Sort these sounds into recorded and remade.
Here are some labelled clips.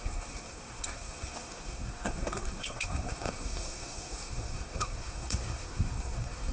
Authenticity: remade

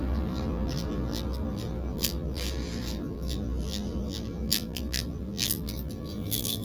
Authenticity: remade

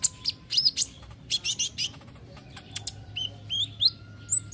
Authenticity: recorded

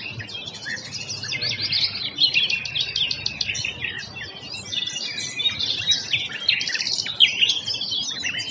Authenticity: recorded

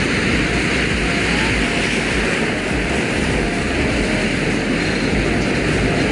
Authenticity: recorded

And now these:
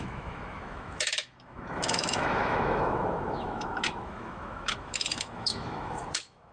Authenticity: remade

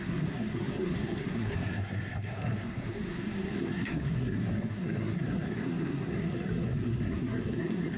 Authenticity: remade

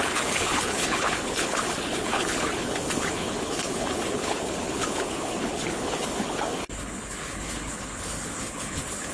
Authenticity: remade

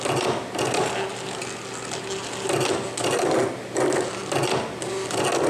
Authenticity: recorded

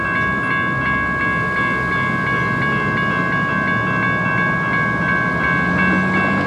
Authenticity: recorded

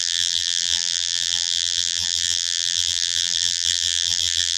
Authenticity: remade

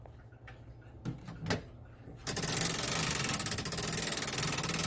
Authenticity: recorded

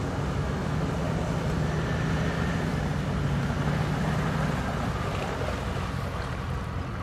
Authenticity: recorded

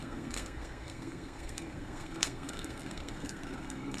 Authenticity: remade